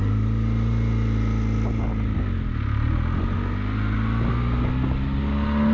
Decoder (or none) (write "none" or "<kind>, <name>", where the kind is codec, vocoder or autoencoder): none